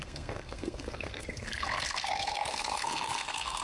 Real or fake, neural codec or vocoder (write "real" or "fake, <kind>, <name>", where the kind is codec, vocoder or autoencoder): fake, codec, SNAC